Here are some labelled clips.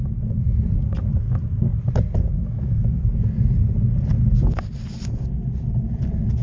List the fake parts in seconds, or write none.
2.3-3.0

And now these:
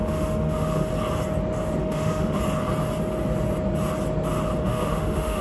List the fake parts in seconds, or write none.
0.0-0.9; 1.8-2.4; 4.6-5.4

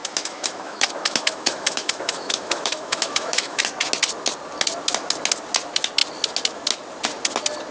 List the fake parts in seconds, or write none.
0.0-3.6

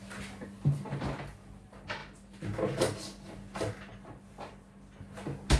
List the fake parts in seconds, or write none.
none

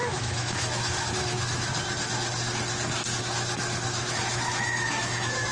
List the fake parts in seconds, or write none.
0.0-1.7; 3.2-5.5